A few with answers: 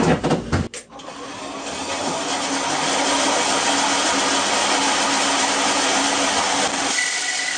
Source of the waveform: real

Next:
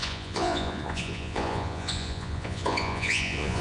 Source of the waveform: fake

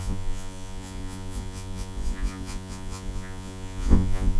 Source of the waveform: fake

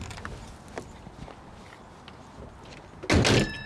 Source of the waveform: real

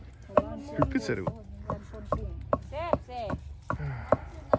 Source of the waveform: real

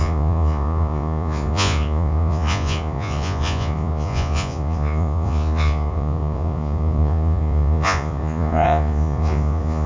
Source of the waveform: fake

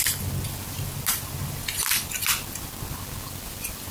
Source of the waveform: real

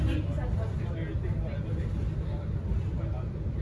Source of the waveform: real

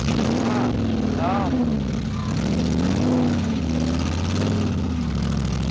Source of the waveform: real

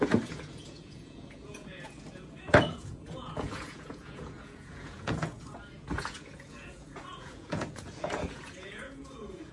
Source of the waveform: fake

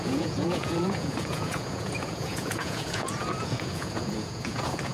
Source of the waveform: fake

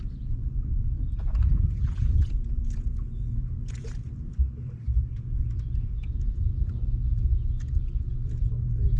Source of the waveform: fake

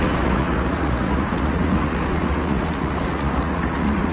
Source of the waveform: fake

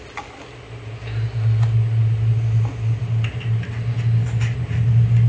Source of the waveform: real